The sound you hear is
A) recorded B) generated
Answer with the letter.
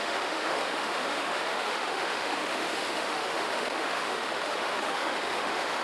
B